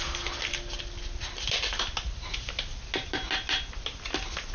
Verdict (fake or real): real